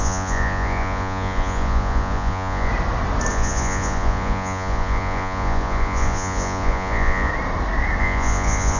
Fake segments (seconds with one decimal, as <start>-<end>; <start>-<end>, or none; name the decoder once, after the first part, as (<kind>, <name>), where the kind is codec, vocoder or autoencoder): 0.0-2.7 (vocoder, Vocos); 3.3-7.3; 8.0-8.8